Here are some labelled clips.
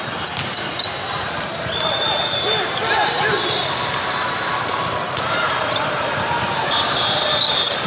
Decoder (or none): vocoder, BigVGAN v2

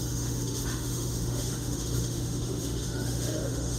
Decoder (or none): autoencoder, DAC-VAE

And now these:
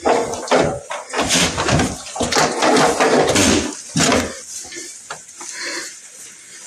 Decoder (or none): none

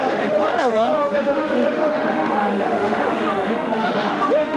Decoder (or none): autoencoder, DAC-VAE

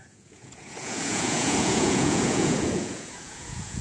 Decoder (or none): vocoder, Vocos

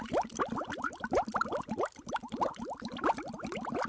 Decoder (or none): vocoder, BigVGAN v2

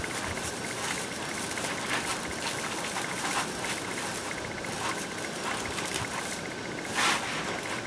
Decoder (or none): none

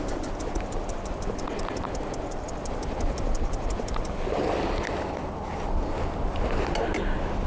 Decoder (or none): none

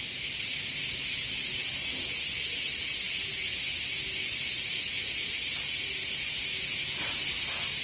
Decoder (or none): none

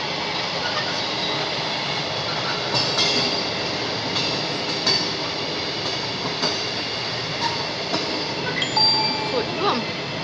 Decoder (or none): none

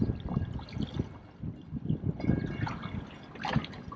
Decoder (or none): none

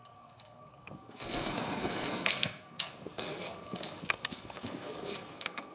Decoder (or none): codec, SNAC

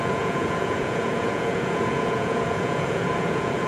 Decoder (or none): vocoder, Vocos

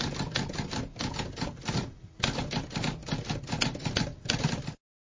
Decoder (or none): none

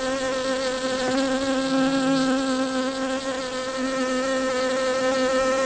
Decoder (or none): none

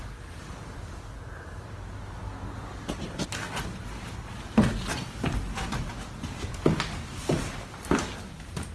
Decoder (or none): none